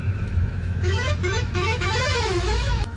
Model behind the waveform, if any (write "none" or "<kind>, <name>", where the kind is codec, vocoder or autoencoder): autoencoder, DAC-VAE